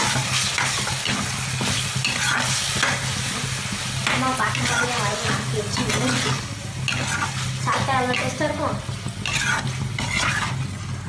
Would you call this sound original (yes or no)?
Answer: yes